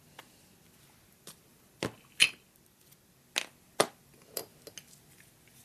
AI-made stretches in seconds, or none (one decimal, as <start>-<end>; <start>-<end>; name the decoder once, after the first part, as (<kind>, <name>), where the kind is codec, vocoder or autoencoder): none